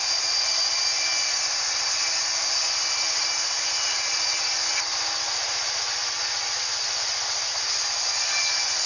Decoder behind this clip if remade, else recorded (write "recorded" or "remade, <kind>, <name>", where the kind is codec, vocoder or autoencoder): recorded